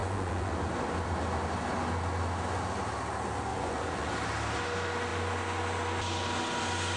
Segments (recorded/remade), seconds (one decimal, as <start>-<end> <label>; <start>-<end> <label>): 0.0-0.5 remade; 0.5-3.5 recorded; 3.5-4.1 remade; 4.1-7.0 recorded